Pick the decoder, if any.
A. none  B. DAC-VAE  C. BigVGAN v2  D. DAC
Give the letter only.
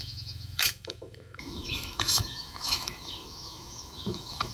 B